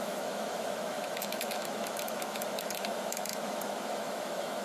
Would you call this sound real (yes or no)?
no